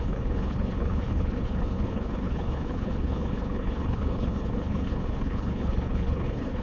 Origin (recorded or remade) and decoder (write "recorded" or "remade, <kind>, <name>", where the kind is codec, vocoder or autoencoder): remade, codec, HILCodec